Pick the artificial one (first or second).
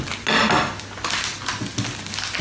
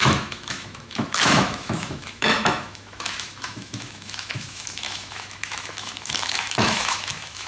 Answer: second